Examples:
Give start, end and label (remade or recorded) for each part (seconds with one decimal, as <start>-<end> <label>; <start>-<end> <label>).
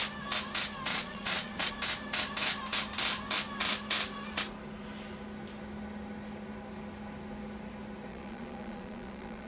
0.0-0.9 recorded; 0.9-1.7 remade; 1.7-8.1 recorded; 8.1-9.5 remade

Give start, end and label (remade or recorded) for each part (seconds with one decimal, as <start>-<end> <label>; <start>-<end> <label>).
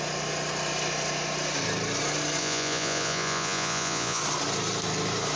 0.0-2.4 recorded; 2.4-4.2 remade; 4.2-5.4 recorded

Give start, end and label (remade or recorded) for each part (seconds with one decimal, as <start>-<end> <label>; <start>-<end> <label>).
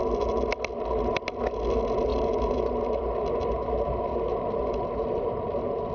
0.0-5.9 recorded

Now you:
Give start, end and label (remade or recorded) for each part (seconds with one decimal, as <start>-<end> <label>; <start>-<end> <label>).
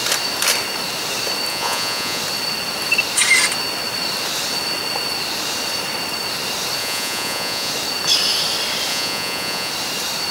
0.0-1.5 recorded; 1.5-2.2 remade; 2.2-6.8 recorded; 6.8-7.7 remade; 7.7-8.9 recorded; 8.9-9.7 remade; 9.7-10.3 recorded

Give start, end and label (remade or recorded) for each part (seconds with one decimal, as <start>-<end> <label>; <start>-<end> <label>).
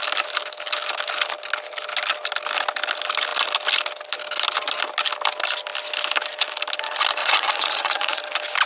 0.0-7.2 recorded; 7.2-8.2 remade; 8.2-8.7 recorded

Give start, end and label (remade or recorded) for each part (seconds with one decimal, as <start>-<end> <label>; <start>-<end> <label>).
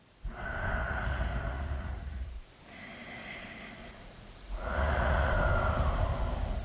0.0-0.8 recorded; 0.8-2.5 remade; 2.5-3.8 recorded; 3.8-5.3 remade; 5.3-6.6 recorded